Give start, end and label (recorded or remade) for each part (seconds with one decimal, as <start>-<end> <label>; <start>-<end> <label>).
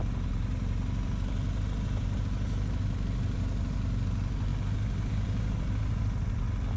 0.0-6.8 recorded